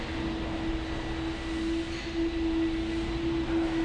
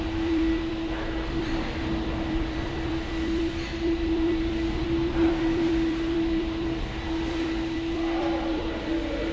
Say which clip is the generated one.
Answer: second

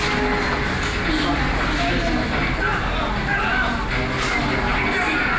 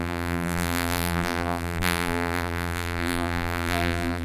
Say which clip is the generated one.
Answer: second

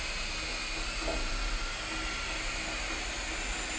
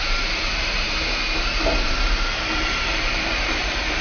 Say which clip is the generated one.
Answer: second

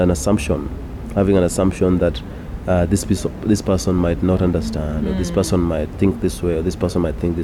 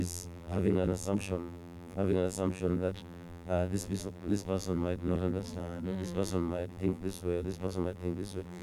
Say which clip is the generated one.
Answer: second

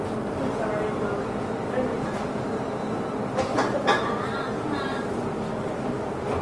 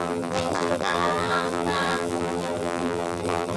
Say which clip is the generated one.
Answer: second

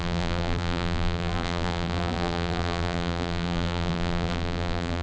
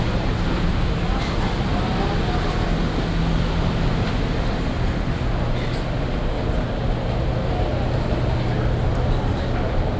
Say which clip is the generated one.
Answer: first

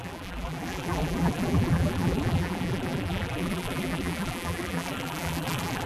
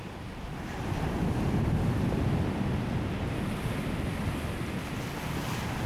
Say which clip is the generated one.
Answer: first